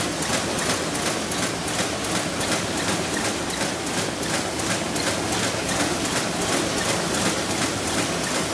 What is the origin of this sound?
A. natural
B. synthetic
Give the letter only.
A